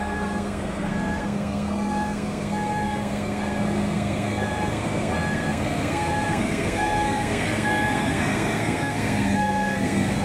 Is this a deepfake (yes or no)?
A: yes